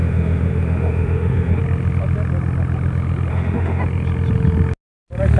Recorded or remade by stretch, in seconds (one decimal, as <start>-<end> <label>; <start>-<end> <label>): 0.0-1.6 remade; 1.6-3.3 recorded; 3.3-3.8 remade; 3.8-5.4 recorded